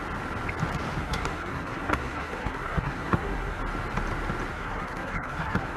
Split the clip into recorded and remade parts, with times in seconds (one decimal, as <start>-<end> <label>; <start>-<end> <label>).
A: 0.0-1.0 recorded; 1.0-3.6 remade; 3.6-4.5 recorded; 4.5-5.8 remade

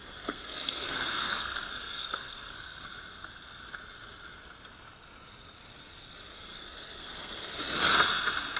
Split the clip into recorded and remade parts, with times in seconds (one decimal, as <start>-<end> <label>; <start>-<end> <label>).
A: 0.0-2.8 remade; 2.8-6.3 recorded; 6.3-7.6 remade; 7.6-8.6 recorded